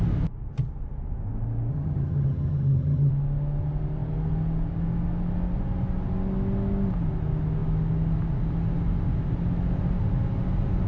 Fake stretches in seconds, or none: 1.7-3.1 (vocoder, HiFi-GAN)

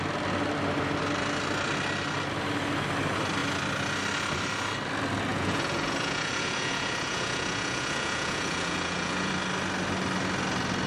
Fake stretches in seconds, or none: 5.3-9.3 (vocoder, Vocos)

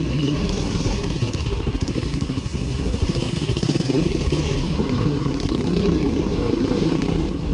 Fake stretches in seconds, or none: 0.0-7.5 (codec, SNAC)

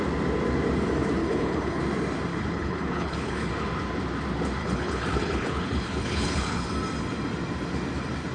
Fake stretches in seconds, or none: 1.2-1.8 (codec, HILCodec); 2.3-3.5; 4.6-6.7

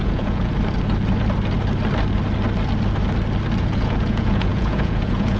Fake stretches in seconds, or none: 0.0-0.5 (vocoder, Vocos); 3.6-5.4

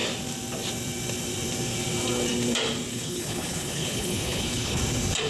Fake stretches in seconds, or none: 2.9-4.8 (codec, HILCodec)

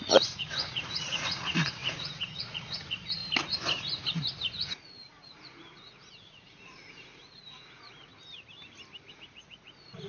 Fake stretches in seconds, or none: 0.0-3.2 (vocoder, Vocos); 4.5-8.1; 9.1-10.1

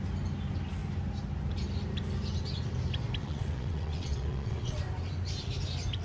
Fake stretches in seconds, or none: 3.2-4.8 (vocoder, WaveNeXt)